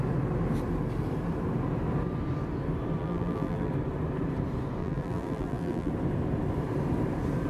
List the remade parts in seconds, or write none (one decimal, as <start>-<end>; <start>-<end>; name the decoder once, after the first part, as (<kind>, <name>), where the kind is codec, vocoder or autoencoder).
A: 3.0-3.7 (vocoder, BigVGAN v2); 4.8-5.9